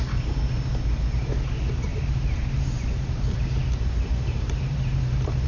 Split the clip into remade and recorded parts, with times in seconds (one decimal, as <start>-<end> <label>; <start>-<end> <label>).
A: 0.0-1.9 recorded; 1.9-5.5 remade